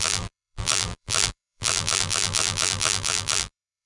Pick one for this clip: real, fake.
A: fake